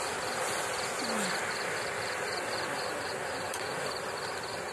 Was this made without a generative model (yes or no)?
yes